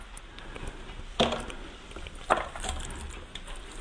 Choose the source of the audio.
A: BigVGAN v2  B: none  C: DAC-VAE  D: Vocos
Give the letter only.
B